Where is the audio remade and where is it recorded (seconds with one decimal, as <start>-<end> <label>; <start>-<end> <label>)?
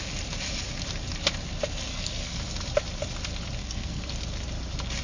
0.0-1.9 recorded; 1.9-2.4 remade; 2.4-3.6 recorded; 3.6-4.1 remade; 4.1-5.0 recorded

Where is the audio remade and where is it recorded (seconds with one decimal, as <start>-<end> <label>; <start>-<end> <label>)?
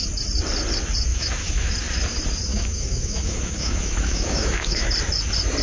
0.0-1.1 recorded; 1.1-1.7 remade; 1.7-2.5 recorded; 2.5-4.9 remade; 4.9-5.6 recorded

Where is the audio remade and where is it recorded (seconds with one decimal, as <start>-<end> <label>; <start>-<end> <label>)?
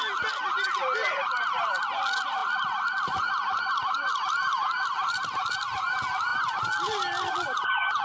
0.0-8.0 recorded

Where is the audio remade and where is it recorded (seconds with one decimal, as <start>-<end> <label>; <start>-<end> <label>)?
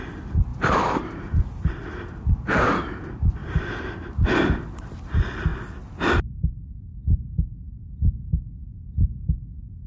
0.0-0.5 recorded; 0.5-2.0 remade; 2.0-3.4 recorded; 3.4-4.0 remade; 4.0-7.0 recorded; 7.0-7.9 remade; 7.9-9.9 recorded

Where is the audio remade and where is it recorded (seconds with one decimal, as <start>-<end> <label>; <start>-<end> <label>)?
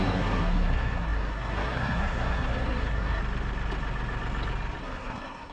0.0-3.2 remade; 3.2-4.8 recorded; 4.8-5.5 remade